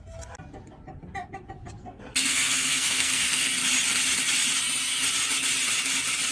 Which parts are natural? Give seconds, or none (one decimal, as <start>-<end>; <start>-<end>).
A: 0.0-1.8; 3.5-6.3

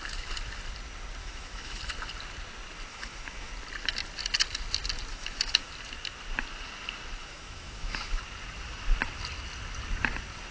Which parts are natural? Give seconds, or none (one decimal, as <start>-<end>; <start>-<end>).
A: 0.0-1.2; 1.8-2.9; 3.5-5.1; 5.7-7.2; 8.2-10.5

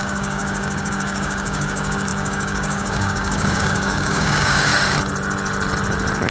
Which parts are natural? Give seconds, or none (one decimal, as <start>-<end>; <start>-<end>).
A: 4.7-6.3

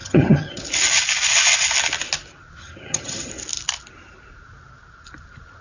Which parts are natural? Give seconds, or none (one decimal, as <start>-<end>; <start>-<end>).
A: 0.6-2.6; 3.3-5.6

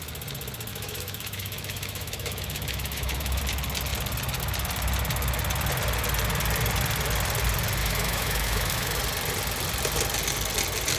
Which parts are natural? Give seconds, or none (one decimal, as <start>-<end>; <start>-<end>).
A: 0.0-0.7; 3.4-7.8; 9.0-11.0

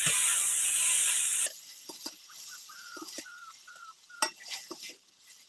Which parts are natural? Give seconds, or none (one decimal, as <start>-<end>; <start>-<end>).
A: 0.0-1.0; 4.3-5.5

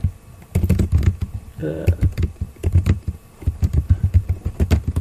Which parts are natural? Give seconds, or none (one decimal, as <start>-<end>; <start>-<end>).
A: 0.0-1.6; 4.6-5.0